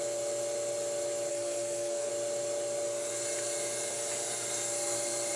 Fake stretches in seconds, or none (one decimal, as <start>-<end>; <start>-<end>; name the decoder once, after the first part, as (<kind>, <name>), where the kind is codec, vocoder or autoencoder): 1.3-2.1 (codec, SNAC)